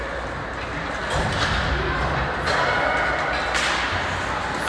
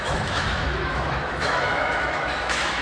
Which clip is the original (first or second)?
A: first